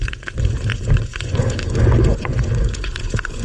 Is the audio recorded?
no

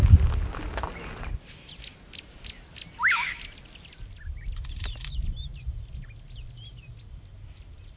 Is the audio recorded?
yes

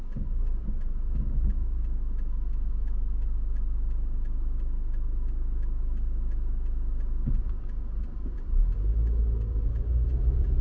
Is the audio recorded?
yes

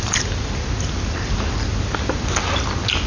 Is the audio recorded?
yes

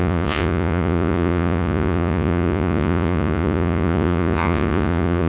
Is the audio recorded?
no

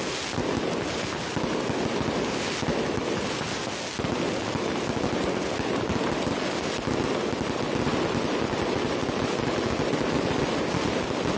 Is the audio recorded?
yes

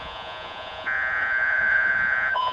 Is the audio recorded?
no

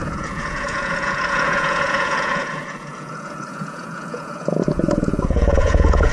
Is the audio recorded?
no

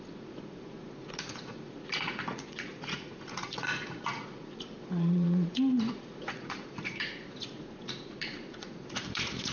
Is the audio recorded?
no